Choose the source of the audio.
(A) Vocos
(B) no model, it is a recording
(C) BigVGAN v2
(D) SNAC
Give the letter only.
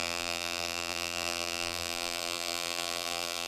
C